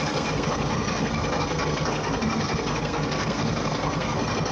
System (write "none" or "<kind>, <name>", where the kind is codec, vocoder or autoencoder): codec, SNAC